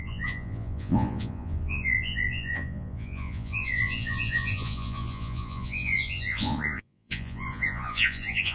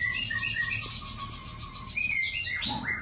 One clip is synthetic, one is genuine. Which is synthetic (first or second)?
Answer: first